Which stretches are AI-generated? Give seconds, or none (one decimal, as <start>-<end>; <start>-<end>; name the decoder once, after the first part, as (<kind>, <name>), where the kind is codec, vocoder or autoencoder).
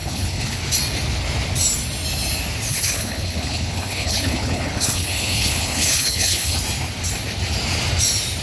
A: 0.0-0.6 (codec, HILCodec); 2.7-6.6